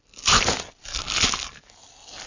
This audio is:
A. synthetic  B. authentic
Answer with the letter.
B